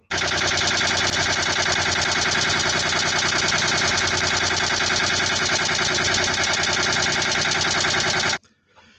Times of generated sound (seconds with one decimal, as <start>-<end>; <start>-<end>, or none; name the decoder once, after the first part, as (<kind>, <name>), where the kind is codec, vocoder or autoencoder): none